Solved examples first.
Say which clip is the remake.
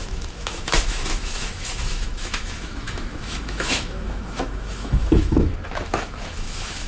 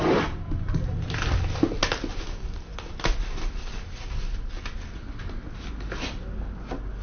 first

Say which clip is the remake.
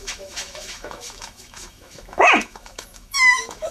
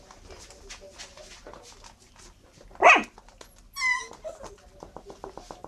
first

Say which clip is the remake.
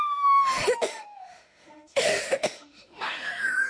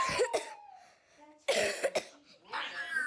first